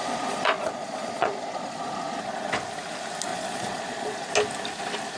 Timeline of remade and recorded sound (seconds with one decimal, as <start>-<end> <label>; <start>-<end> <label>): 0.0-2.5 remade; 2.5-3.3 recorded; 3.3-4.3 remade; 4.3-5.2 recorded